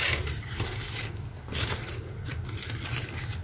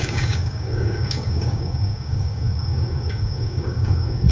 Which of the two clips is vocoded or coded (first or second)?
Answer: second